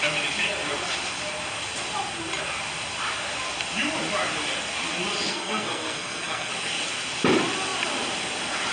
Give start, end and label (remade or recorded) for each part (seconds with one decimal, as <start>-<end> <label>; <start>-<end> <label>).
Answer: 0.0-5.3 recorded; 5.3-6.5 remade; 6.5-8.7 recorded